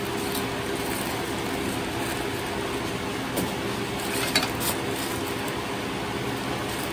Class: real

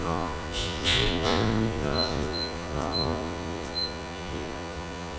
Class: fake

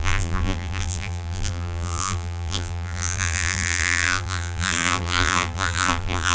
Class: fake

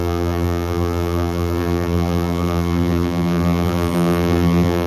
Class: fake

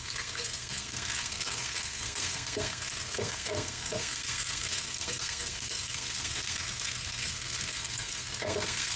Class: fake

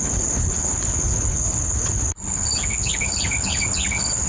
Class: fake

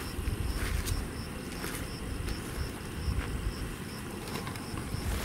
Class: fake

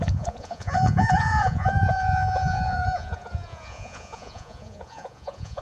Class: fake